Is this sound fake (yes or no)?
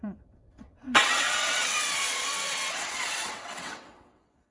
yes